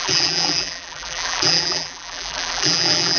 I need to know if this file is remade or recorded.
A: remade